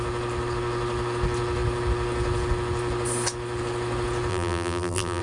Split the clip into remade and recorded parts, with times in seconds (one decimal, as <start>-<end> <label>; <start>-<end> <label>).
0.0-4.3 recorded; 4.3-5.2 remade